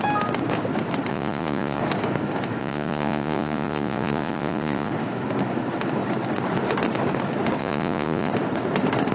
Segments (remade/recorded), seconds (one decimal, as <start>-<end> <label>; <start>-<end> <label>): 0.0-1.1 recorded; 1.1-1.8 remade; 1.8-2.6 recorded; 2.6-4.9 remade; 4.9-7.6 recorded; 7.6-8.3 remade; 8.3-9.1 recorded

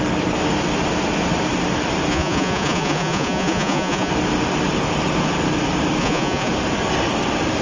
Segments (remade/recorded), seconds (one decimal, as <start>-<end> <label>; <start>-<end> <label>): 0.0-2.1 recorded; 2.1-4.1 remade; 4.1-6.0 recorded; 6.0-6.5 remade; 6.5-7.6 recorded